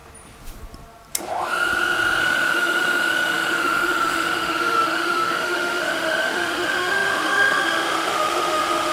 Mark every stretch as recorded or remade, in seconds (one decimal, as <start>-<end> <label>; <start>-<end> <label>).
0.0-2.2 recorded; 2.2-8.9 remade